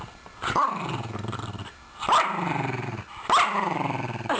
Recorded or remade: recorded